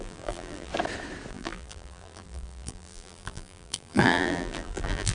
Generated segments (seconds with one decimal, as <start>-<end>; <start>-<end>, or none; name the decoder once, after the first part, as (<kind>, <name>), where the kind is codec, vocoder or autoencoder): 0.0-0.7 (vocoder, BigVGAN v2); 1.3-5.1